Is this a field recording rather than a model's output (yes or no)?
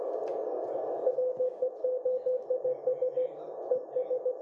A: yes